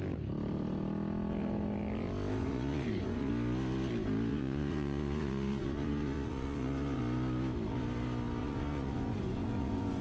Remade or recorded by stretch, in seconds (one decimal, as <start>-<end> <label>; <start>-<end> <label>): 0.0-2.4 recorded; 2.4-3.3 remade; 3.3-4.3 recorded; 4.3-7.0 remade; 7.0-8.4 recorded; 8.4-10.0 remade